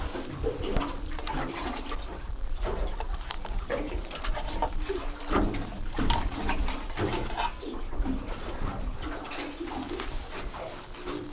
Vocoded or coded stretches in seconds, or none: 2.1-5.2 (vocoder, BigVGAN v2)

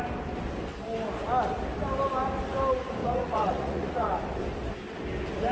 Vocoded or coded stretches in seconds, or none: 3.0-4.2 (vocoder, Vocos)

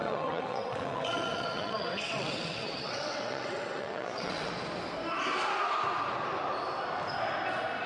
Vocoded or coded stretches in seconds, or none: 0.0-4.5 (vocoder, WaveNeXt)

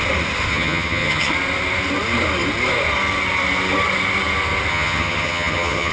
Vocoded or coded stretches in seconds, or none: 0.5-1.3 (vocoder, HiFi-GAN); 4.7-5.9